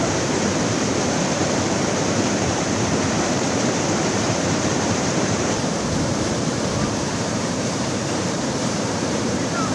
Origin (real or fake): fake